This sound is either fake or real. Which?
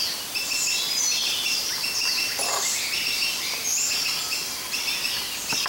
real